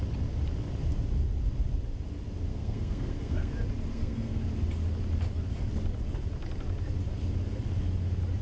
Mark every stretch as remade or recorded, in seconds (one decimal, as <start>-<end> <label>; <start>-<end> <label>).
0.0-2.5 recorded; 2.5-3.5 remade; 3.5-3.9 recorded; 3.9-4.4 remade; 4.4-8.4 recorded